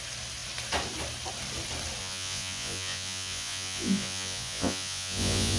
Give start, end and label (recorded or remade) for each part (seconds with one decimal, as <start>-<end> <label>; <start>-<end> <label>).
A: 0.0-2.0 recorded; 2.0-5.6 remade